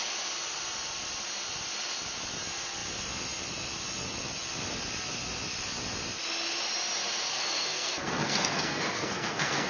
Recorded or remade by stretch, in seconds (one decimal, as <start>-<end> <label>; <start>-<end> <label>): 0.0-7.3 recorded; 7.3-9.7 remade